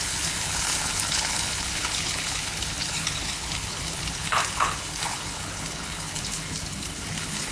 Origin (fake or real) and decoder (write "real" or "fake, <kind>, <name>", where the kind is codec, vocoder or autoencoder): fake, codec, HILCodec